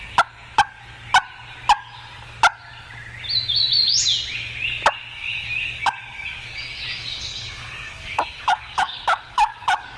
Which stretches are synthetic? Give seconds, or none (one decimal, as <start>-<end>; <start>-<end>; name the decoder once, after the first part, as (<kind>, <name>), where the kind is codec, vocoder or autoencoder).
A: 5.1-10.0 (codec, DAC)